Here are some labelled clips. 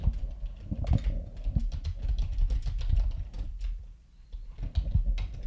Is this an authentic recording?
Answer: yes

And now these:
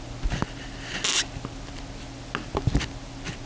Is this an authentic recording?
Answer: yes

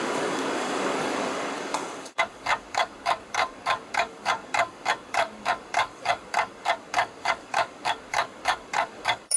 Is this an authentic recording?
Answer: no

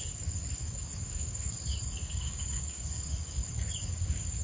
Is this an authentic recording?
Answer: no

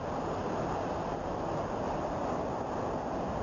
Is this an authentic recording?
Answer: yes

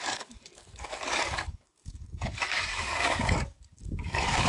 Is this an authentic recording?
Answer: no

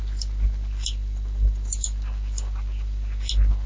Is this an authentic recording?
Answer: yes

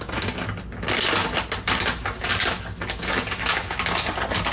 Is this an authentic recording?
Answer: yes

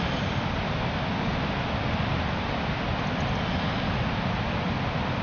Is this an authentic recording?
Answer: yes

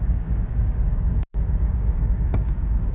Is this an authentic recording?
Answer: no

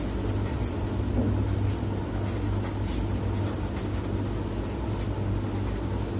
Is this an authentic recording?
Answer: yes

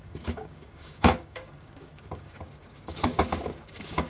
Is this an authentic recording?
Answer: no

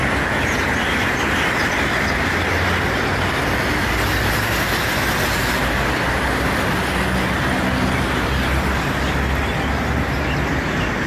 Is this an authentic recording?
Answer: yes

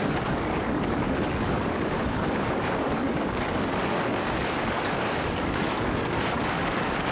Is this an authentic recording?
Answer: no